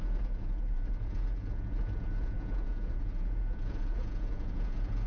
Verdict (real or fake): fake